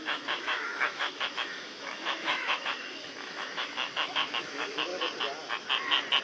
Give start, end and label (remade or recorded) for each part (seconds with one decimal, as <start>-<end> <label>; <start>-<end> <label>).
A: 0.0-4.9 remade; 4.9-6.2 recorded